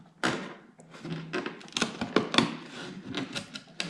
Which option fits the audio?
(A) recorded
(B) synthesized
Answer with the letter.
A